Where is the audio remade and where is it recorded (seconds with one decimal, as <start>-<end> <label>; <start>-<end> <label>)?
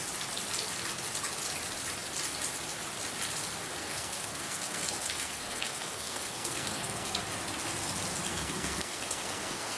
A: 0.0-3.8 recorded; 3.8-7.2 remade; 7.2-8.3 recorded; 8.3-9.8 remade